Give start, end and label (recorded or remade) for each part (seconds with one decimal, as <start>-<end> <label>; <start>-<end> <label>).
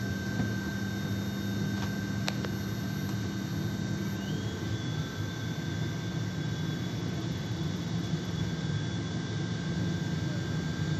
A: 0.0-7.0 recorded; 7.0-8.4 remade; 8.4-11.0 recorded